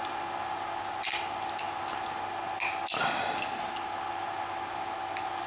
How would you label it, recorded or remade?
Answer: recorded